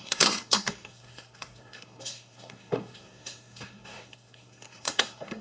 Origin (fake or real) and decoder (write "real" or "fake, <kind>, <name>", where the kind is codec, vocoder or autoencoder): fake, codec, SNAC